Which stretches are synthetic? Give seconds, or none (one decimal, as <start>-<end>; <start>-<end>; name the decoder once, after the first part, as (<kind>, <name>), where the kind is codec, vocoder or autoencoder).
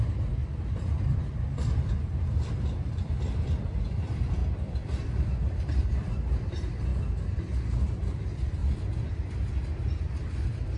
0.0-6.9 (vocoder, BigVGAN v2); 7.6-8.6; 9.5-10.8